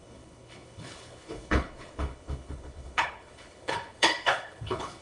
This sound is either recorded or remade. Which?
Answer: remade